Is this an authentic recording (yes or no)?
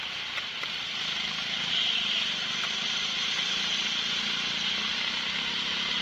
yes